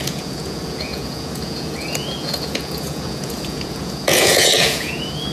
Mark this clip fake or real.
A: fake